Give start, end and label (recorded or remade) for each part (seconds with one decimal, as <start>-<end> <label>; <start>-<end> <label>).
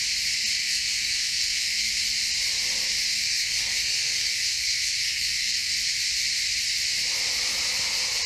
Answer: 0.0-0.6 recorded; 0.6-1.9 remade; 1.9-3.1 recorded; 3.1-5.7 remade; 5.7-8.3 recorded